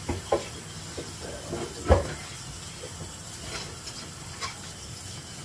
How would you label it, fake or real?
real